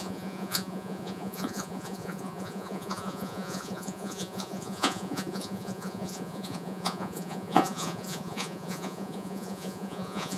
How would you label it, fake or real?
fake